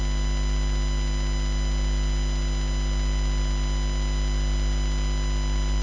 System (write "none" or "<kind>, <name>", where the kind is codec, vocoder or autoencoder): none